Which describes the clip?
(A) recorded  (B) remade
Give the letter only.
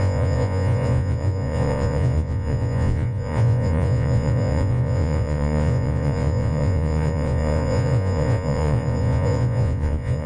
B